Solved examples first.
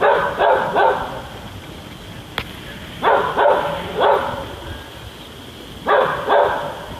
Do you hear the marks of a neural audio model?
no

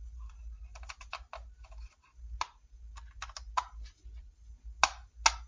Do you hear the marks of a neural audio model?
no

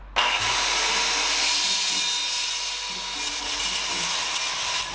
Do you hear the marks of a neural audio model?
no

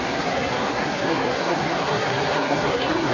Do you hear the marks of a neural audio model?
yes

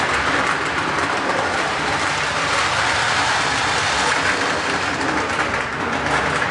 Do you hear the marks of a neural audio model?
no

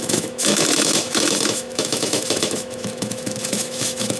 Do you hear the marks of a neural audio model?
yes